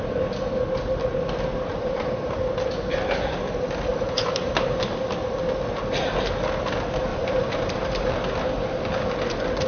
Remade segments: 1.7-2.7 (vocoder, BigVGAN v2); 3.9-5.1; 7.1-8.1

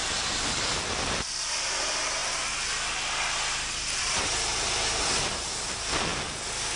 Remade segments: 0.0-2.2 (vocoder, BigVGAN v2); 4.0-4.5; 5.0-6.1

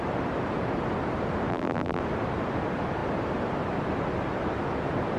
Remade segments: 1.5-2.0 (vocoder, BigVGAN v2)

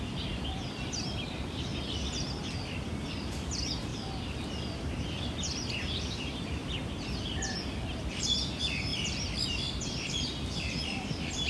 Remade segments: 0.0-1.7 (vocoder, BigVGAN v2); 2.3-3.9; 4.8-6.6; 8.0-11.5

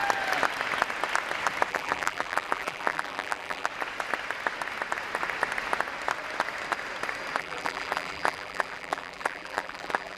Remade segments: 1.7-3.7 (vocoder, BigVGAN v2); 7.4-10.2

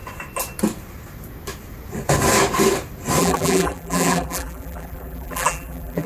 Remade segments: 3.2-6.1 (vocoder, BigVGAN v2)